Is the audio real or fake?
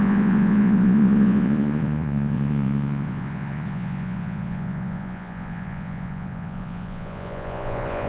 fake